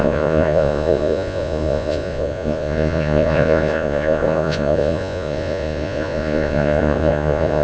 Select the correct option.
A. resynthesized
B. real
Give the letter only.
A